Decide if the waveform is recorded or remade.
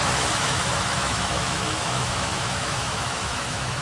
remade